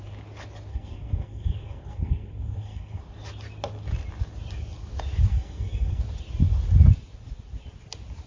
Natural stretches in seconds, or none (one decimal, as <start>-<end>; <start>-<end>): 0.0-0.7; 3.0-5.3; 6.0-8.3